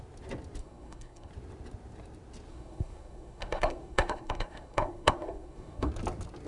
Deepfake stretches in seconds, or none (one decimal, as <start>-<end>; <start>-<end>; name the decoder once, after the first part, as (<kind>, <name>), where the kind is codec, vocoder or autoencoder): 0.6-1.3 (codec, SNAC); 2.5-5.9